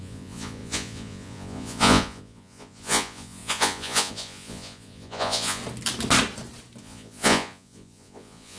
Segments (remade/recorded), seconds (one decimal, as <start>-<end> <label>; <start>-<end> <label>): 0.0-5.6 remade; 5.6-6.8 recorded; 6.8-8.6 remade